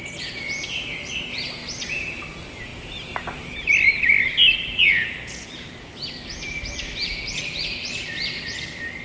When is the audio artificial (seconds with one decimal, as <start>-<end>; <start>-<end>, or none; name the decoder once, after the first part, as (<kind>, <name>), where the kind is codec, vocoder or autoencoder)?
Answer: none